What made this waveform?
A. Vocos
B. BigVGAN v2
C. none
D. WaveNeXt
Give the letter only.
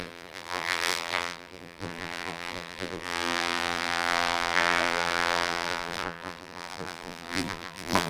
B